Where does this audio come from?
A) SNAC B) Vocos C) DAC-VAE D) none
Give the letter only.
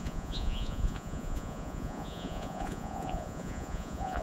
B